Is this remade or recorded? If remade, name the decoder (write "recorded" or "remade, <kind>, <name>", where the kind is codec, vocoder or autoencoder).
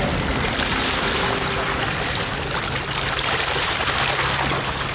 recorded